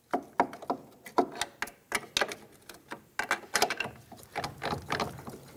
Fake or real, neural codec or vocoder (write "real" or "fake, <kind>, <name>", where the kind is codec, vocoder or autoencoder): real